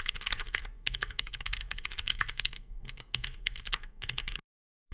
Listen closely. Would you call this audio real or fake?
fake